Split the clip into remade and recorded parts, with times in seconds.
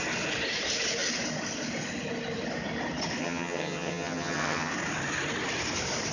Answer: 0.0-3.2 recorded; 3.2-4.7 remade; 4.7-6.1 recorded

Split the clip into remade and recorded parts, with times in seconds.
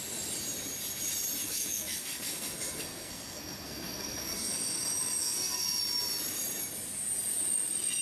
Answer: 0.0-1.4 recorded; 1.4-4.8 remade; 4.8-5.2 recorded; 5.2-5.8 remade; 5.8-8.0 recorded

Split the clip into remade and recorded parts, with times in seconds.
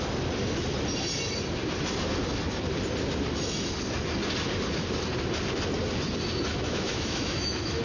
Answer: 0.0-6.7 recorded; 6.7-7.8 remade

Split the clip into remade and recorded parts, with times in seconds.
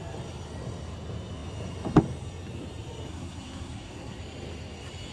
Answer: 0.0-3.1 recorded; 3.1-4.2 remade; 4.2-5.1 recorded